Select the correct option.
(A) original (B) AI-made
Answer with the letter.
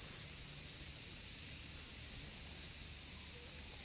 A